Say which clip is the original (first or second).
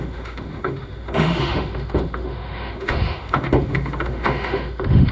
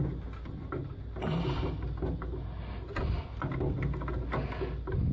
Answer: second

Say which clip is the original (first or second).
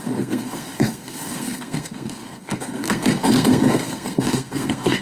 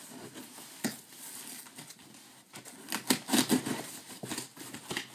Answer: second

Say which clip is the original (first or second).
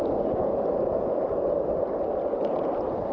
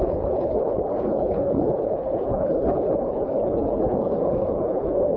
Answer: first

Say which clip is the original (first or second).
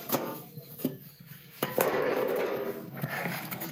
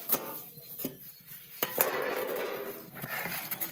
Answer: second